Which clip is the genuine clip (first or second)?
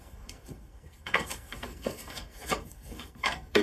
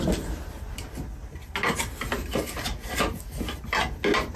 second